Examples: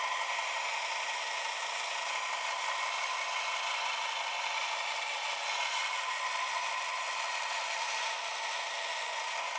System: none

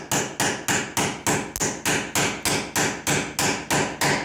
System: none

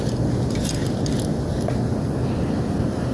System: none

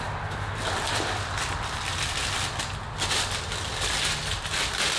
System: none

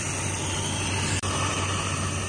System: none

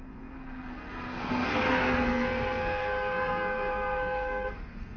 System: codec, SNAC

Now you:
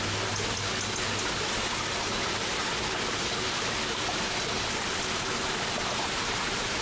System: none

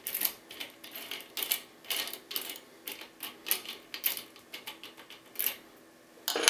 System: none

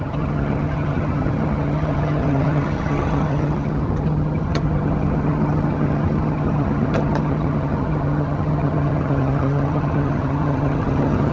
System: vocoder, HiFi-GAN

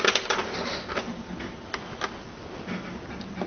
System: none